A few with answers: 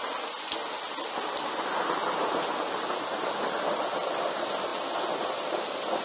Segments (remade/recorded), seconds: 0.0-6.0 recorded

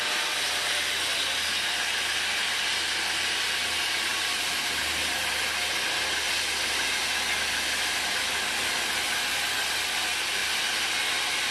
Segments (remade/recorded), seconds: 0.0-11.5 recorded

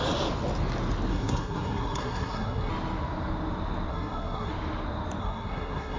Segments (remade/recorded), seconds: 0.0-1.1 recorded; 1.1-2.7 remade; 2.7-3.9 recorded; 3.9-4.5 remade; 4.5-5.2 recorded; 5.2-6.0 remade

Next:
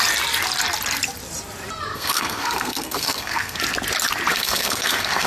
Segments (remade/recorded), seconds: 0.0-1.9 recorded; 1.9-3.6 remade; 3.6-4.3 recorded; 4.3-5.3 remade

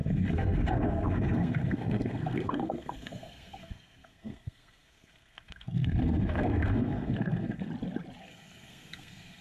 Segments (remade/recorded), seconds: 0.0-7.7 remade; 7.7-8.2 recorded; 8.2-9.4 remade

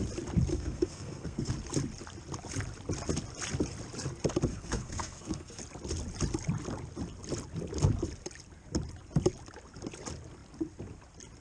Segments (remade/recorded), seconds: 0.0-0.5 recorded; 0.5-1.5 remade; 1.5-4.5 recorded; 4.5-5.6 remade; 5.6-11.4 recorded